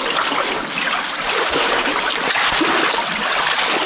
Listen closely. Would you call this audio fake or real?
real